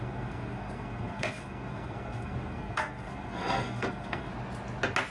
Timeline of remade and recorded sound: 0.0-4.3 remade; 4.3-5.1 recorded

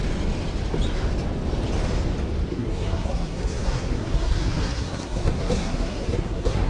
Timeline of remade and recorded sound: 0.0-2.5 recorded; 2.5-6.7 remade

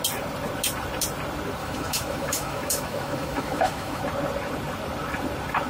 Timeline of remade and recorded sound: 0.0-1.6 recorded; 1.6-4.0 remade; 4.0-5.7 recorded

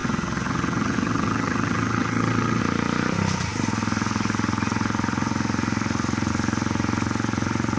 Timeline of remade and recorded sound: 0.0-2.6 remade; 2.6-7.8 recorded

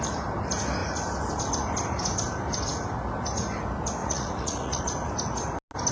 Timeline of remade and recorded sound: 0.0-4.0 recorded; 4.0-4.8 remade; 4.8-5.9 recorded